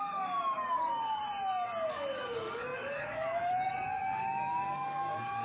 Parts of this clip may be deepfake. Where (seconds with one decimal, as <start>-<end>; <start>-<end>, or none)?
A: 0.0-1.2; 1.9-5.4